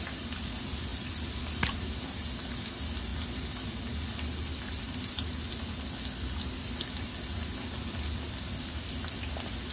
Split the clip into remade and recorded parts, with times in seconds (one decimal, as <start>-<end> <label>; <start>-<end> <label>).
0.0-9.7 recorded